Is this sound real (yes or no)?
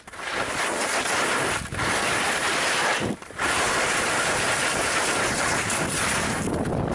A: yes